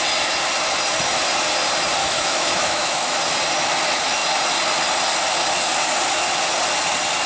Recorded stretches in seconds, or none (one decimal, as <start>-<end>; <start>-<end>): 0.0-2.0; 3.2-7.3